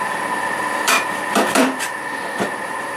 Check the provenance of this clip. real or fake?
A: fake